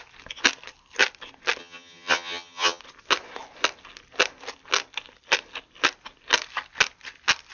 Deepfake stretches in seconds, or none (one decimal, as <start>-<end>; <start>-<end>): 1.6-2.8